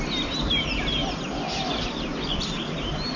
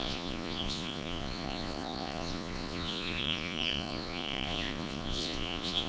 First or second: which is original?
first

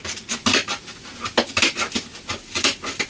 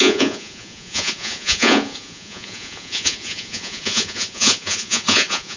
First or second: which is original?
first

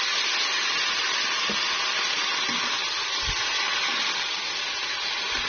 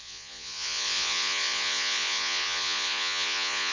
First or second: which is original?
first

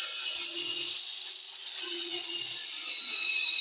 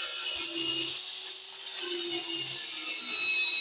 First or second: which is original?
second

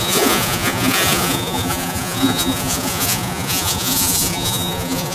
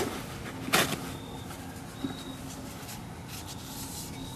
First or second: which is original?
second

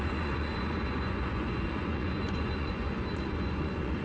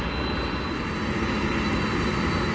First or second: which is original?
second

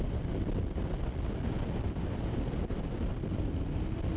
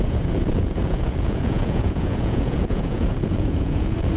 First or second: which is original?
first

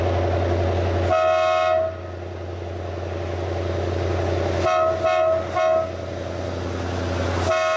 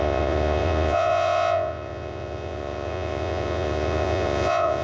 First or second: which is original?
first